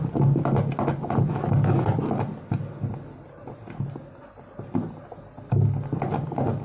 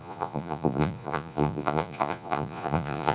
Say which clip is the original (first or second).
first